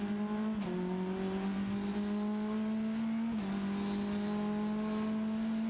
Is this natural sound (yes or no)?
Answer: yes